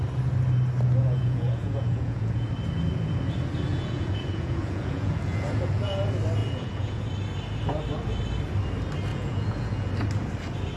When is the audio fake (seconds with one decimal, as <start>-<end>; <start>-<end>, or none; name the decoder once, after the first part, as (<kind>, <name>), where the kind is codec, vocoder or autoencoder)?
1.0-2.5 (vocoder, Vocos); 3.7-6.0; 6.4-7.1; 9.1-9.9